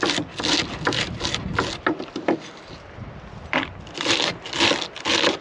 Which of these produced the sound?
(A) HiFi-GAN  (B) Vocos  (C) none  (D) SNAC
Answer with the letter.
C